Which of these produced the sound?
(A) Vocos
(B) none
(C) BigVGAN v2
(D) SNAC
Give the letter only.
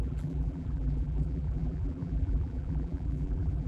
C